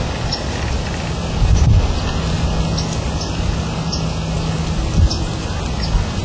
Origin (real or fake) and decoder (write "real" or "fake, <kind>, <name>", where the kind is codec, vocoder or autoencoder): real